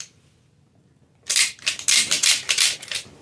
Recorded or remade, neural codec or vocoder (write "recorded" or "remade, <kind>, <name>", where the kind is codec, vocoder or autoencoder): recorded